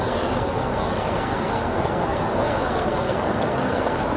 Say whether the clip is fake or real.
fake